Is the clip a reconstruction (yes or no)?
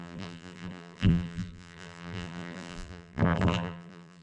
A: yes